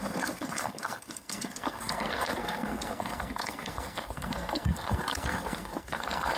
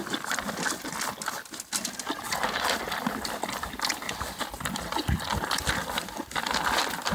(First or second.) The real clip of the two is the second